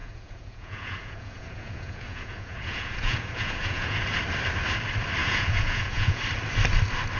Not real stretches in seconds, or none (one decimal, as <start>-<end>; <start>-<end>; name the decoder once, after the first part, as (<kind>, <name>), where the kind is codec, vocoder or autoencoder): 0.0-4.0 (vocoder, Vocos); 5.2-6.2